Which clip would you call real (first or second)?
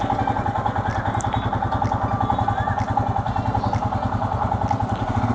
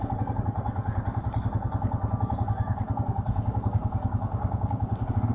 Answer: first